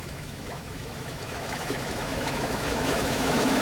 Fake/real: fake